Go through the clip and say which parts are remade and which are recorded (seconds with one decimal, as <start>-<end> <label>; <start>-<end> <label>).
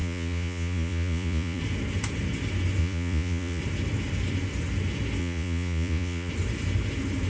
0.0-1.6 remade; 1.6-2.8 recorded; 2.8-3.6 remade; 3.6-5.2 recorded; 5.2-6.3 remade; 6.3-7.3 recorded